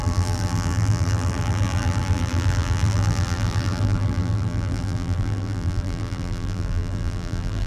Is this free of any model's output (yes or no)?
no